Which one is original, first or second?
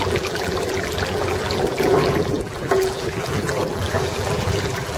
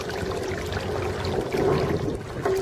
second